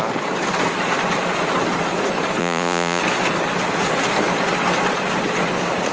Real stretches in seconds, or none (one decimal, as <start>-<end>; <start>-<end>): 0.0-2.4; 3.0-5.9

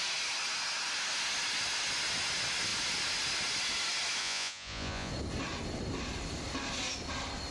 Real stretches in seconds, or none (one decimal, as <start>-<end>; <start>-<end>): 0.0-4.2; 5.1-7.5

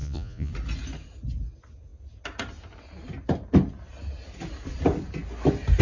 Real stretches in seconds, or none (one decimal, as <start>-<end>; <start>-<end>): 0.5-5.8

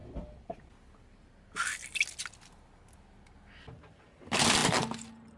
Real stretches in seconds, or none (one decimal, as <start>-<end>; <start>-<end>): 0.0-5.4

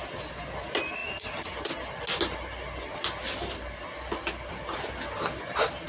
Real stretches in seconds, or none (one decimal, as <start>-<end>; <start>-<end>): 0.0-5.9